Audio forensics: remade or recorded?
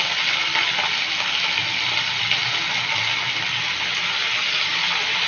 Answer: recorded